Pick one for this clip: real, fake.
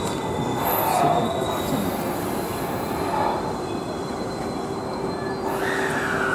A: real